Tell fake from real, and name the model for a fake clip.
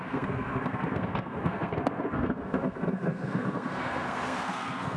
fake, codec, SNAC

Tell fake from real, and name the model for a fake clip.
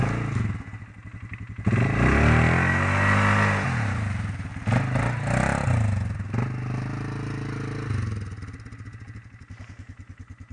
real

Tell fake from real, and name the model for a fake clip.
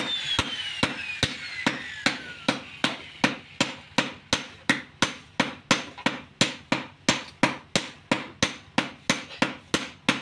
real